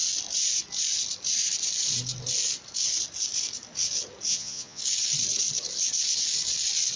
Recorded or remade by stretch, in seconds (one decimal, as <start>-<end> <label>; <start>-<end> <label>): 0.0-4.3 recorded; 4.3-4.8 remade; 4.8-7.0 recorded